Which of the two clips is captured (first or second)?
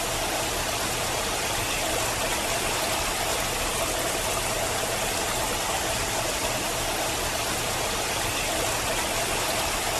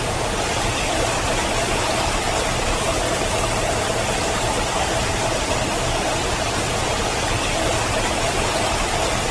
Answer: first